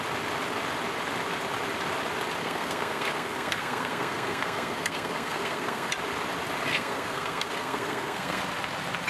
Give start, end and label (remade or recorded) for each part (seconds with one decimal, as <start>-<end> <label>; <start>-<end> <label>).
0.0-2.4 recorded; 2.4-5.9 remade; 5.9-6.7 recorded; 6.7-8.4 remade; 8.4-9.1 recorded